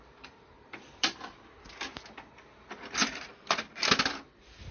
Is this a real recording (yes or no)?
no